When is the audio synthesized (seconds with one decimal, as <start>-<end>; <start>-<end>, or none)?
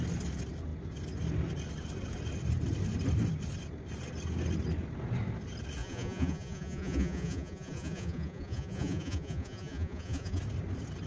5.8-10.4